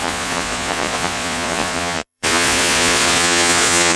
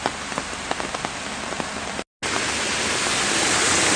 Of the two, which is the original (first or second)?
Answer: second